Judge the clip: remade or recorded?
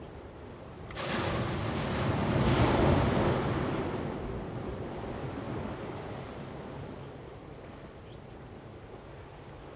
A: recorded